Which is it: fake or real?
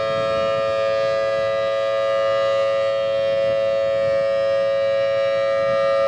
real